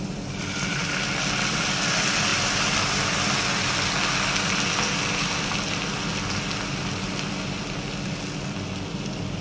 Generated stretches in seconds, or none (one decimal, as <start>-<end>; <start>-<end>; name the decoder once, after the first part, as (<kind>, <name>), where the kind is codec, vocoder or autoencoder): none